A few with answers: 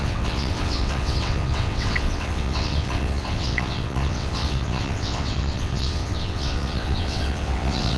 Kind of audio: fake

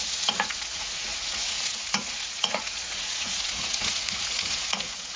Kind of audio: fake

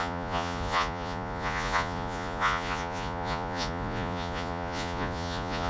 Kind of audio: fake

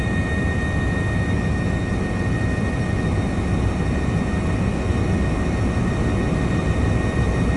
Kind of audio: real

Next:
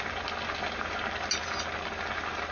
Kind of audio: real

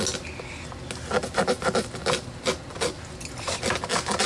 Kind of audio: real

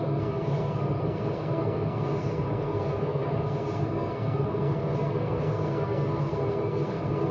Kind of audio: fake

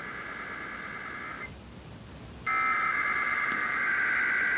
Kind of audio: real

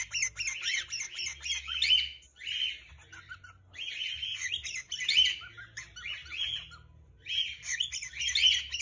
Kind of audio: real